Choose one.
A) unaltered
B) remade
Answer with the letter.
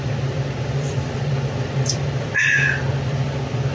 B